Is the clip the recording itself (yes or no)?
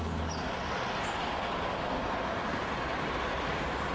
yes